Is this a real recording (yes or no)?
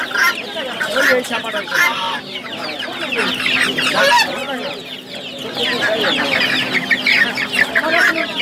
yes